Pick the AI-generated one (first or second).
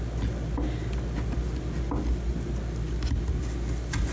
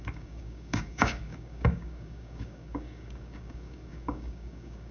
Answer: second